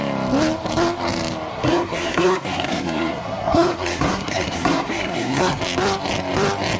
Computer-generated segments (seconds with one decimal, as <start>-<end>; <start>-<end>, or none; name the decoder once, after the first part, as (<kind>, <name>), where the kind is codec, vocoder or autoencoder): 1.5-5.6 (codec, SNAC)